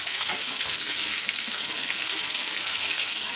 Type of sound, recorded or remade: remade